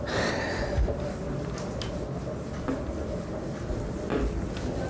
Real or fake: real